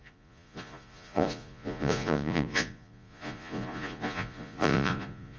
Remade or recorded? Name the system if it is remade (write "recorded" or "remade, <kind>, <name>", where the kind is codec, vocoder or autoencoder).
remade, vocoder, Vocos